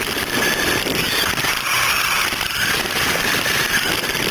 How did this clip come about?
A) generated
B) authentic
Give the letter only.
B